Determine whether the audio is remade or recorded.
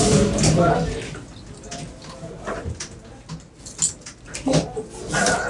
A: recorded